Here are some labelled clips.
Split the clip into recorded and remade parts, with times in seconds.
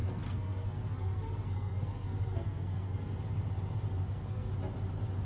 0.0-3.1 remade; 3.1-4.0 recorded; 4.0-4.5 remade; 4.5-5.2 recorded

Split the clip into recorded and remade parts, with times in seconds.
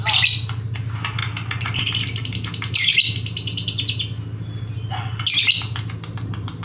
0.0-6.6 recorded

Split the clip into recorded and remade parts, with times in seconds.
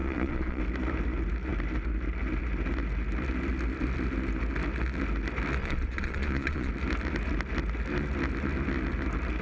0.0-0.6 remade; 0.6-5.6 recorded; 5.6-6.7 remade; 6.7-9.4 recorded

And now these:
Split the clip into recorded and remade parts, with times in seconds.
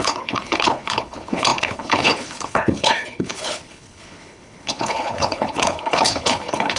0.0-6.8 remade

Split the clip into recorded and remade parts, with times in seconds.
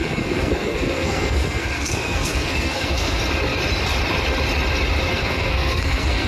0.0-3.2 remade; 3.2-5.1 recorded; 5.1-6.3 remade